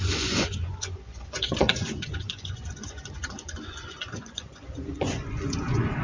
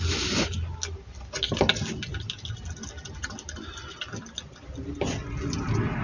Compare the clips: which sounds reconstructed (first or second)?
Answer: first